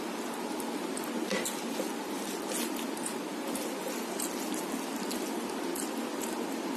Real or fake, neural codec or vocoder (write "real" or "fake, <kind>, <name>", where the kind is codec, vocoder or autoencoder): real